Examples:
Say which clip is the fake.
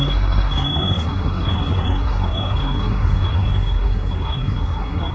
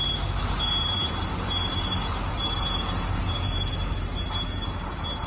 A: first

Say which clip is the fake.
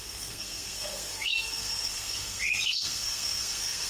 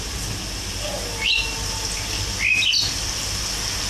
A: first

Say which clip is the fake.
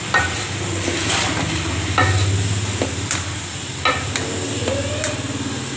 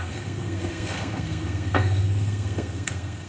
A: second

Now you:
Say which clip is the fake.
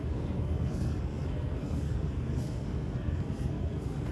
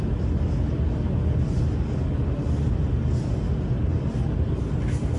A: first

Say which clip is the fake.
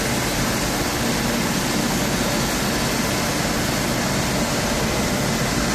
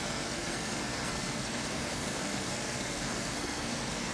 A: second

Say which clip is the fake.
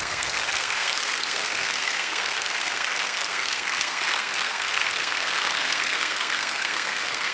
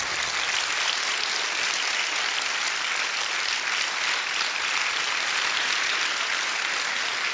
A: first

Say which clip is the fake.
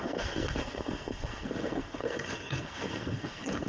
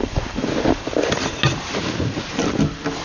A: first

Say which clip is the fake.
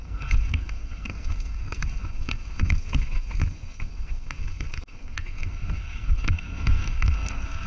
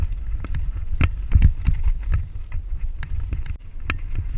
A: first